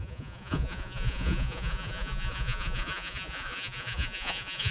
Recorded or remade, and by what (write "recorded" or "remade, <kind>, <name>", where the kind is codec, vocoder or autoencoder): remade, vocoder, Vocos